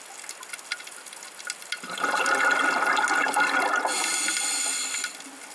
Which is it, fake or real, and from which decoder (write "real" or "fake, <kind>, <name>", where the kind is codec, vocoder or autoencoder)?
real